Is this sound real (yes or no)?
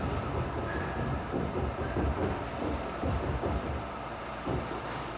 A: no